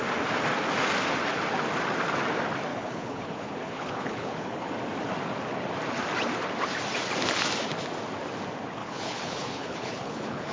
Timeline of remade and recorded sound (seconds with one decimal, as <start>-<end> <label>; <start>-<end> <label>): 0.0-2.7 recorded; 2.7-4.7 remade; 4.7-8.8 recorded; 8.8-10.5 remade